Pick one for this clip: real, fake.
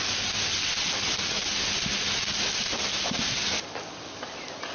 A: real